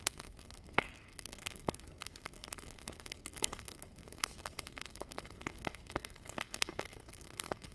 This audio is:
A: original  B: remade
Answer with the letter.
B